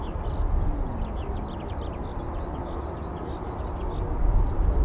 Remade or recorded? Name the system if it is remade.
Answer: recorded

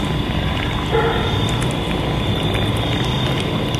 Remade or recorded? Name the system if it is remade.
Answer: recorded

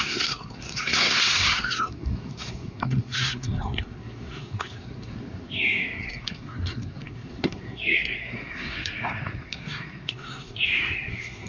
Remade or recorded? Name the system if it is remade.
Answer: remade, codec, SNAC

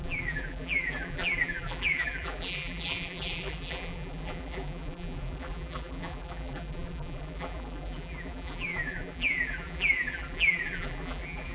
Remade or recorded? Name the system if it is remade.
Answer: remade, vocoder, BigVGAN v2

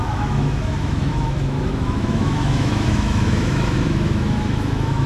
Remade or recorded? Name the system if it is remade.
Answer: remade, autoencoder, DAC-VAE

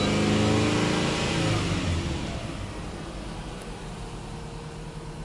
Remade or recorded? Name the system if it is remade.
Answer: recorded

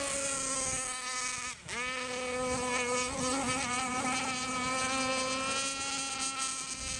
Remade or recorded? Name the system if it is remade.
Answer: recorded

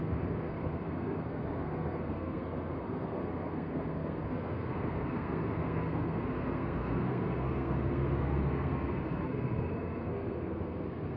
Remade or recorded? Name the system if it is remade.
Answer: remade, codec, SNAC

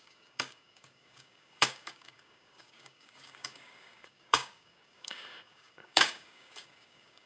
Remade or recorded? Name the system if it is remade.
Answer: remade, codec, DAC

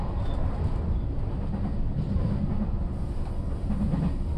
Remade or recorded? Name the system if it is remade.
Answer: recorded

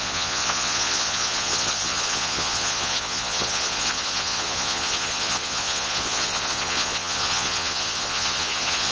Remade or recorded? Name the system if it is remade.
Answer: remade, vocoder, Vocos